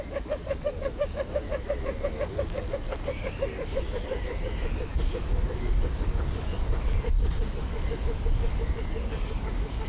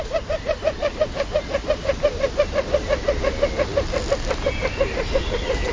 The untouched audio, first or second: second